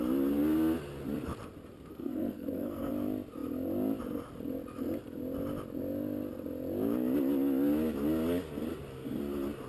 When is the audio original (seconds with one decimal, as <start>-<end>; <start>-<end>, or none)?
0.0-1.9; 2.9-9.7